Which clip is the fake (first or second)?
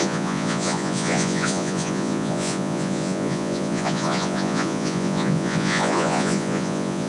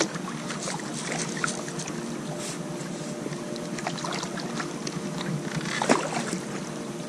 first